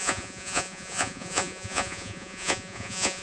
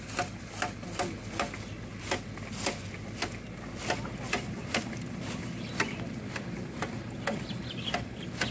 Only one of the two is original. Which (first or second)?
second